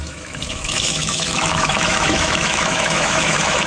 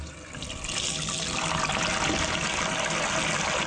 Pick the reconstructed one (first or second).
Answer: first